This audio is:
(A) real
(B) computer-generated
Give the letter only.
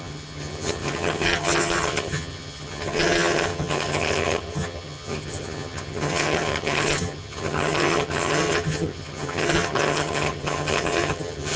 B